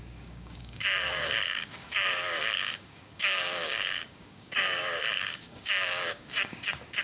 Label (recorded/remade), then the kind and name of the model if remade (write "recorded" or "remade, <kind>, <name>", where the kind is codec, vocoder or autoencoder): remade, codec, DAC